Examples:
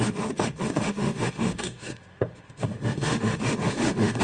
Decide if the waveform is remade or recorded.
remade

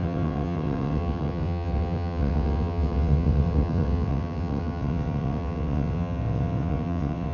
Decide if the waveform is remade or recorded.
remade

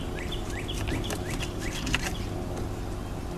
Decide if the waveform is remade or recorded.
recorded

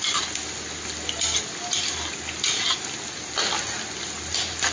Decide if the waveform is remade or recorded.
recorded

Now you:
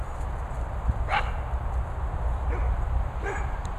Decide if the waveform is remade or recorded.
recorded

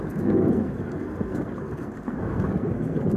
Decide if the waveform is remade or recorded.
remade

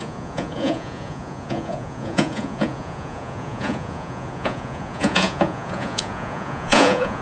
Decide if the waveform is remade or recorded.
remade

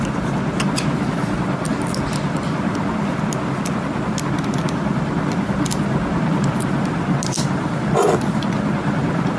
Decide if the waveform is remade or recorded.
recorded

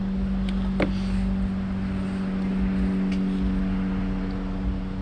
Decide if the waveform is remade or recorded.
recorded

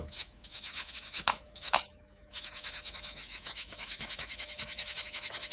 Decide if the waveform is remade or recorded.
remade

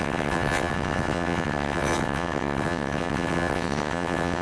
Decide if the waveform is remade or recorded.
remade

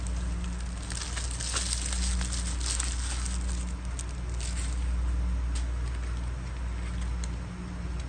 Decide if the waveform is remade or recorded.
recorded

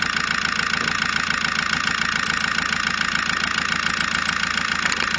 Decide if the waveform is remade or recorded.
recorded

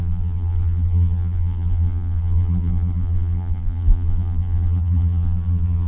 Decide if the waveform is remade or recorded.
remade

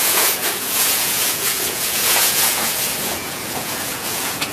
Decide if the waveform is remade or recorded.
remade